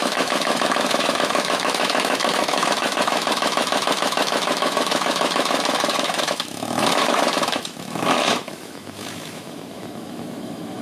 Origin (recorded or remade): remade